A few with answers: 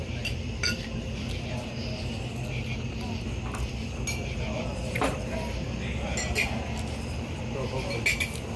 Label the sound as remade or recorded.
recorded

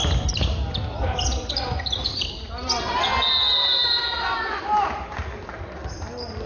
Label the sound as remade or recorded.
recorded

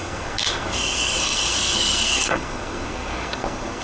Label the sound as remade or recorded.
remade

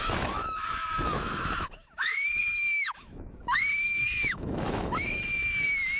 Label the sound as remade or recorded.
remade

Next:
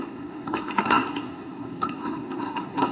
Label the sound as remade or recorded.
remade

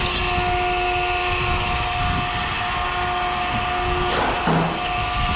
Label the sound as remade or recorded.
recorded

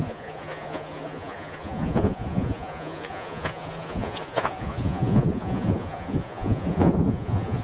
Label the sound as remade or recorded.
remade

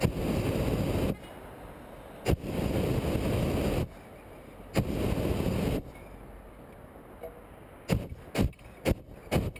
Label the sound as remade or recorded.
recorded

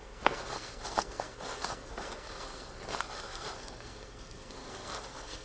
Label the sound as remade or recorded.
remade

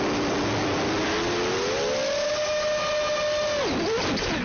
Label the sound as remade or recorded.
recorded